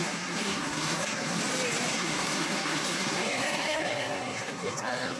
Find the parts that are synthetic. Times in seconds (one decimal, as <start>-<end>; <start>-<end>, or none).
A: 0.0-1.4; 1.9-5.2